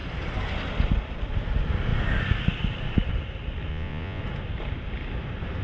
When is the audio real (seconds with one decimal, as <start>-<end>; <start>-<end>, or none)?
0.0-3.7; 4.2-5.6

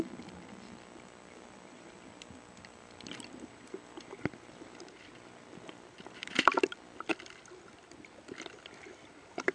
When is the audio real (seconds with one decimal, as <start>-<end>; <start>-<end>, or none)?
0.0-9.5